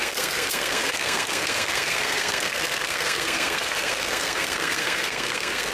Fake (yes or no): yes